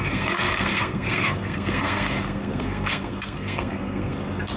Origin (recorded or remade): remade